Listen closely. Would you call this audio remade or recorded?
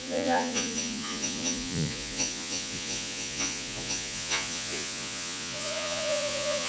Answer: remade